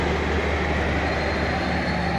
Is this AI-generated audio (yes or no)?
no